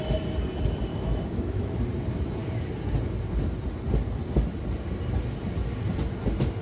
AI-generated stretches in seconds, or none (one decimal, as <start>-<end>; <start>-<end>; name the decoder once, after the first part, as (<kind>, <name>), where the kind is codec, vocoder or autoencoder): 0.9-1.7 (autoencoder, DAC-VAE)